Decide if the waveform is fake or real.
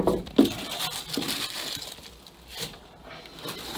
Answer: real